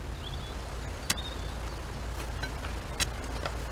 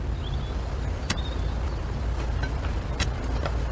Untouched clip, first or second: first